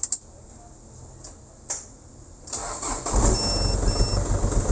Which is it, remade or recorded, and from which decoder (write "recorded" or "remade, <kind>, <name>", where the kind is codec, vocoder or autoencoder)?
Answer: recorded